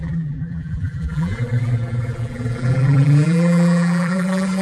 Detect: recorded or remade remade